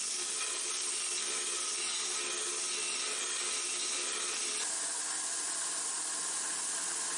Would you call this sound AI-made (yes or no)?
no